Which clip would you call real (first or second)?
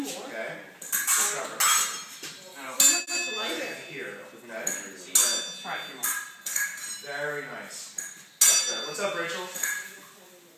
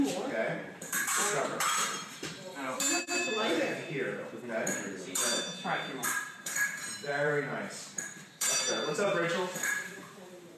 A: first